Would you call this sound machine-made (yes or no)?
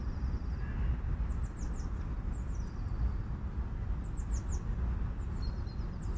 no